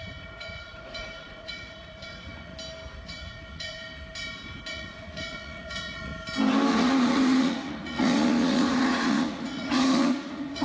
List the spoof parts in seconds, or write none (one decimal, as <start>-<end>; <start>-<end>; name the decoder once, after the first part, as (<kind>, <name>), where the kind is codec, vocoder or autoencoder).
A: 0.0-2.5 (vocoder, Vocos); 3.0-3.8; 4.7-6.1; 6.7-10.6